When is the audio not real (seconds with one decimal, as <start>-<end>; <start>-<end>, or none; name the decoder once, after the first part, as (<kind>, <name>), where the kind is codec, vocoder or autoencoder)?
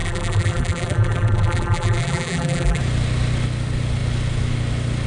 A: 0.0-2.8 (vocoder, BigVGAN v2)